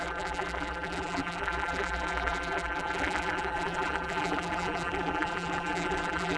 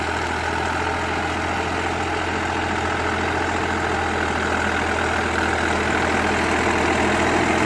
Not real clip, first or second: first